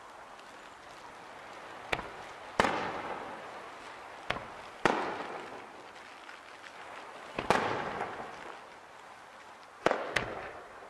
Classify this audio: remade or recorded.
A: recorded